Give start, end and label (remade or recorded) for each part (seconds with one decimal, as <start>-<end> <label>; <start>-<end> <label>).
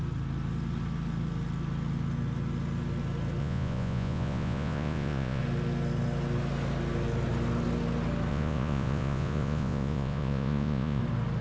0.0-3.4 recorded; 3.4-5.4 remade; 5.4-8.3 recorded; 8.3-11.0 remade; 11.0-11.4 recorded